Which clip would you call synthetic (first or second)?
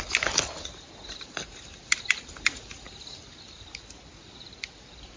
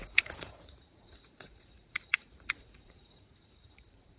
second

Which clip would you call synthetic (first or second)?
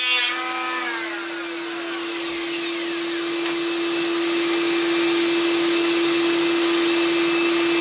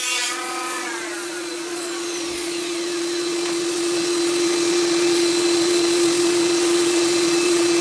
second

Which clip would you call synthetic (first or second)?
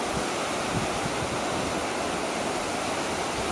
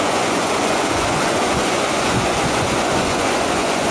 second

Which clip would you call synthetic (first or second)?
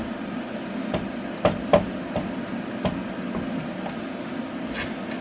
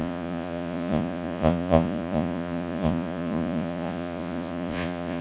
second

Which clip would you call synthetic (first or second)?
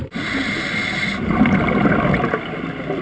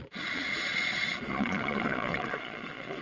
second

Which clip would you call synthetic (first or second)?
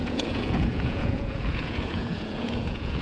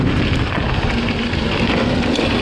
first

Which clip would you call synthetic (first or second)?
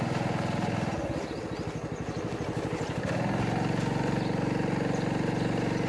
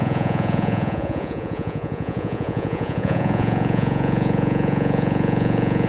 second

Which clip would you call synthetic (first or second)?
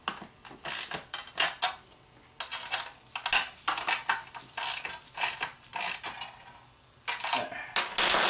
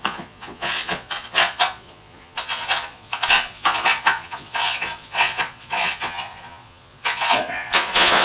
second